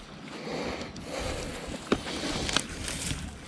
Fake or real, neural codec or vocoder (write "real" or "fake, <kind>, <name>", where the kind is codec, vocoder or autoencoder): real